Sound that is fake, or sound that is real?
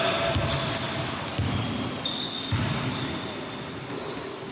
real